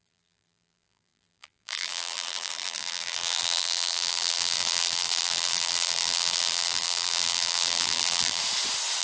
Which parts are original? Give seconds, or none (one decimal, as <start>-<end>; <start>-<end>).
8.4-9.0

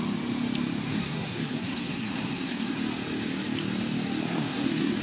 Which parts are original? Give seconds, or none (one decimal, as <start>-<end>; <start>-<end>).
0.0-0.9; 2.8-4.2